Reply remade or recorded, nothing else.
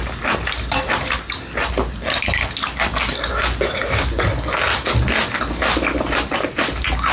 recorded